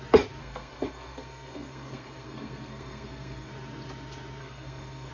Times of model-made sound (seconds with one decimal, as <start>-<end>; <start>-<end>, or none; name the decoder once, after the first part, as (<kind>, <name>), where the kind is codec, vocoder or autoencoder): 0.4-3.5 (codec, SNAC); 4.4-5.1